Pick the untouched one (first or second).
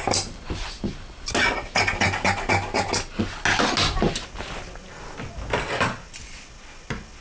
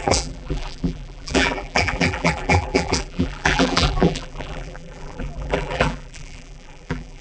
first